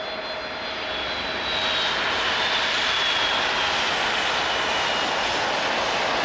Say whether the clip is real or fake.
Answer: real